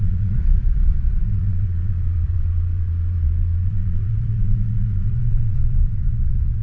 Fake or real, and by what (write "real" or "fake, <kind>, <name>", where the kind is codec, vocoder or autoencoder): fake, vocoder, Vocos